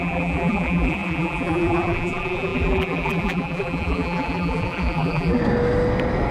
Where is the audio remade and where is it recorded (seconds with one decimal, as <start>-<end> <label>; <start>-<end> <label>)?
0.0-5.4 remade; 5.4-6.3 recorded